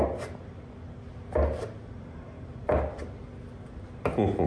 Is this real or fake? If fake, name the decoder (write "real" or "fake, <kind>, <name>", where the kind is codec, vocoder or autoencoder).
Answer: real